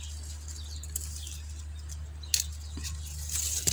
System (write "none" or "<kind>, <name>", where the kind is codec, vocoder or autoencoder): none